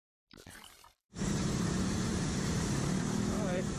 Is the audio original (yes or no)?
no